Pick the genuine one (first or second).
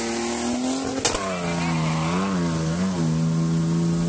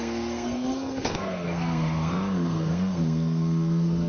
first